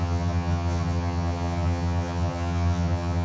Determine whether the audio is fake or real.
fake